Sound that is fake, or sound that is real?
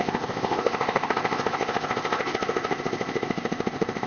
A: fake